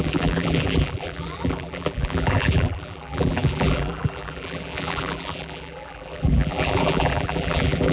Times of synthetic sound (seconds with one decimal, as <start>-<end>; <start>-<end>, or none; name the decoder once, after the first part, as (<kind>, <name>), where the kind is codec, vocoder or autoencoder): 0.0-7.9 (vocoder, BigVGAN v2)